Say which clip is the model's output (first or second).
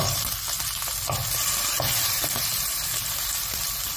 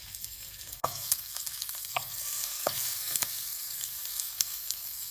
second